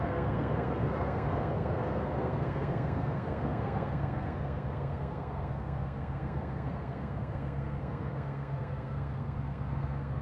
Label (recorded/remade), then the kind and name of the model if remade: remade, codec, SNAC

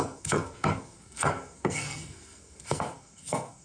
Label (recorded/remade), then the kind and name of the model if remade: remade, codec, SNAC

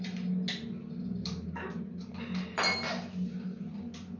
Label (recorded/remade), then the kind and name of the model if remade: recorded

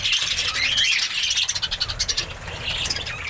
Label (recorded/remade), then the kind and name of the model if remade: recorded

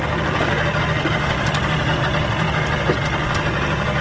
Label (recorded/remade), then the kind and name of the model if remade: recorded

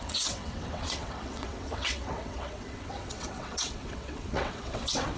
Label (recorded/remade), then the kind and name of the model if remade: remade, vocoder, WaveNeXt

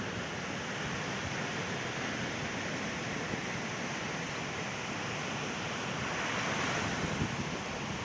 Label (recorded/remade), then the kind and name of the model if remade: recorded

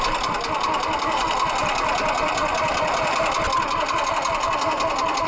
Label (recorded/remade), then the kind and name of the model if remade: recorded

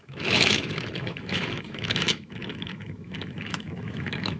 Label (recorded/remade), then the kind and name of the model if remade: remade, autoencoder, DAC-VAE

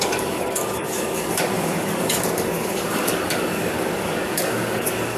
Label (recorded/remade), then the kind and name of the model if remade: remade, codec, DAC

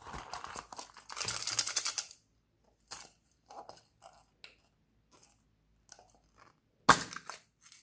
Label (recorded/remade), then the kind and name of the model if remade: recorded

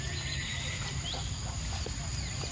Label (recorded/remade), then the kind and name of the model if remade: recorded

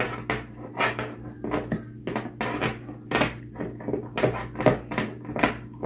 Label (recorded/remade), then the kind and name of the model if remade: recorded